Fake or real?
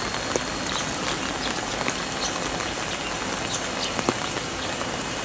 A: real